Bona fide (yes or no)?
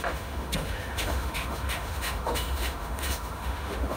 no